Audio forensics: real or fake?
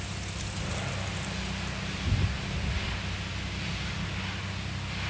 real